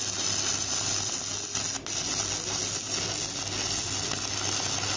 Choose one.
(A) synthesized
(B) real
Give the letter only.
B